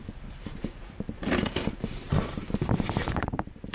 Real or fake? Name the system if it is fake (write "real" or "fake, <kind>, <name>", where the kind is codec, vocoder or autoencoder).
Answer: fake, vocoder, BigVGAN v2